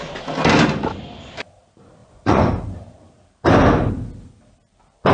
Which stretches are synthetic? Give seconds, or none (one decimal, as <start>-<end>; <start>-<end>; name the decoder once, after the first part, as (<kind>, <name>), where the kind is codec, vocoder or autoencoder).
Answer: 2.0-2.5 (vocoder, Vocos)